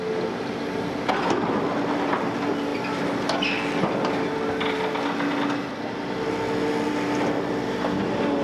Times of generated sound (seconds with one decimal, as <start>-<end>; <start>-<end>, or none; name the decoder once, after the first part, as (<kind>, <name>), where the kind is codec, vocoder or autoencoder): none